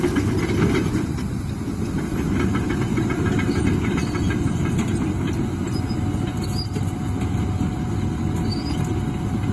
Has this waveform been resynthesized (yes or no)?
no